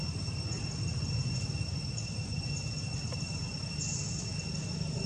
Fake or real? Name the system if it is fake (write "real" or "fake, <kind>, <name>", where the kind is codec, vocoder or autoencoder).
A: real